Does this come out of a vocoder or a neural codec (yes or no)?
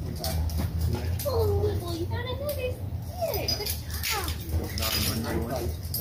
no